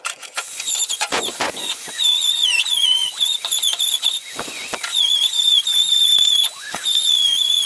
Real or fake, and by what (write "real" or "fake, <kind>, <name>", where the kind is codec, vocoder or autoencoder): fake, vocoder, Vocos